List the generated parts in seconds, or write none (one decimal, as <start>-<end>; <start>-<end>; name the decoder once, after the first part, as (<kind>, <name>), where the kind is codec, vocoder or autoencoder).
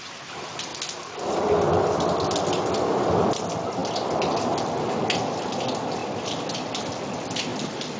none